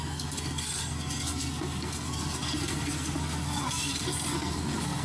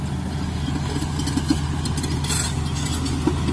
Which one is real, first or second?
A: second